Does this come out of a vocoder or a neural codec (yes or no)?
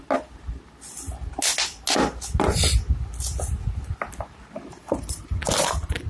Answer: no